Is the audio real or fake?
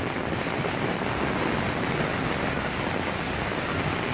real